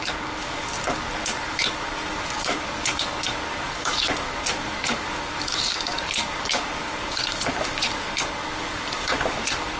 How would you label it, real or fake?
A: fake